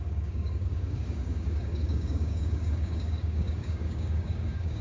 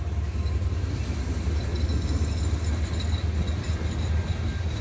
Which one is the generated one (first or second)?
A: first